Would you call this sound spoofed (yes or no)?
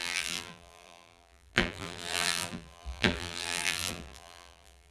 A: yes